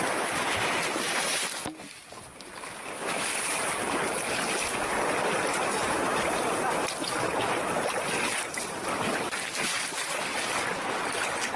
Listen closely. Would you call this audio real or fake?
real